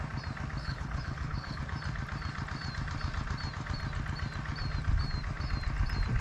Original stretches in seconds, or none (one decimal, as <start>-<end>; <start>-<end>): 0.0-0.6; 1.6-6.2